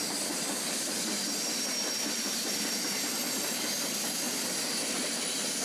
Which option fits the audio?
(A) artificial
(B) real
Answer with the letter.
A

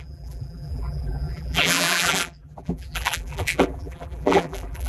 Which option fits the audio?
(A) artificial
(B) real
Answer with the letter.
A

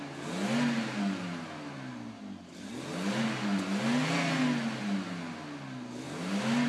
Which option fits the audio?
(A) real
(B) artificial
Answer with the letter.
A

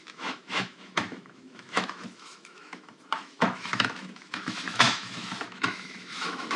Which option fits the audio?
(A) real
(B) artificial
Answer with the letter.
B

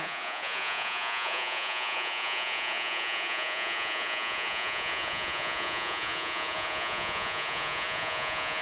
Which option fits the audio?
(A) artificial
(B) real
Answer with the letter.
A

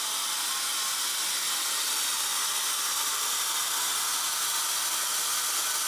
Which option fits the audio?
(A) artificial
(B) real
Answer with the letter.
A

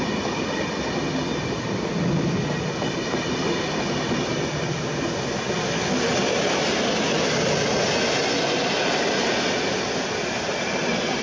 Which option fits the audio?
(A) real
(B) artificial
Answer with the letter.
A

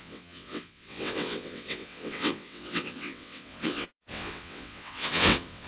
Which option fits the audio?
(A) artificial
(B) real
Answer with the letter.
A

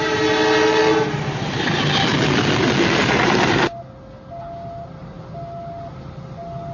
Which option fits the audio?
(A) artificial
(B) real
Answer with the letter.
B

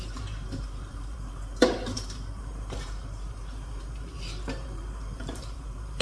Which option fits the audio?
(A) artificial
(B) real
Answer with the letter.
A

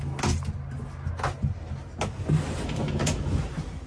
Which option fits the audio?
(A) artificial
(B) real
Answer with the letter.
B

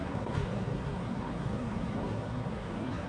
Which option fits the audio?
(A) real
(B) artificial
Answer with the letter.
B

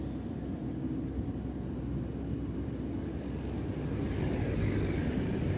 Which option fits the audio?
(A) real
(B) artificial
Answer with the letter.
A